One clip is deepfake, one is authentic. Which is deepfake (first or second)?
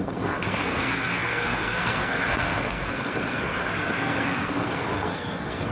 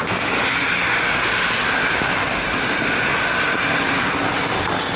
first